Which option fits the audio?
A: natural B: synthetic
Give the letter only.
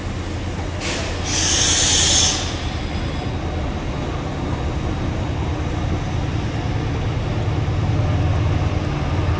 A